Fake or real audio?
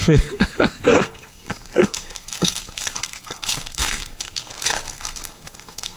fake